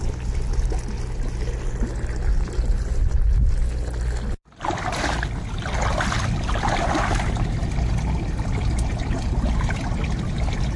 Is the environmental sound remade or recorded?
recorded